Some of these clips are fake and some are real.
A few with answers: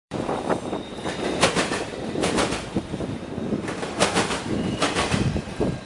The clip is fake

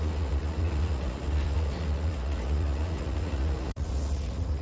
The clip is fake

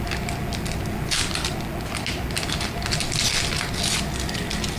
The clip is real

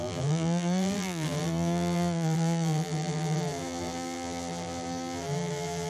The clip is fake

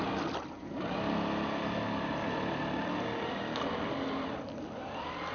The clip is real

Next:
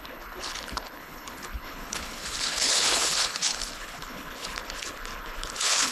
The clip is fake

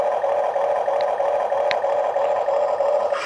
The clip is real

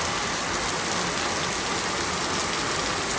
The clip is real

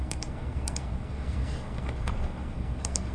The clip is fake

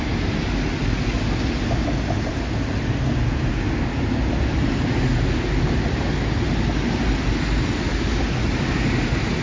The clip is real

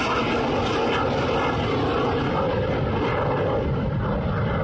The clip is real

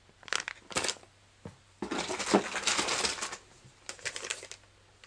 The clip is real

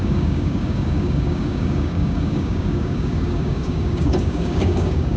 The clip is fake